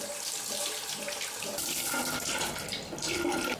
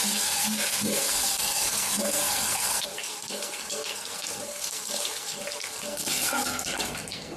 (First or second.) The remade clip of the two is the second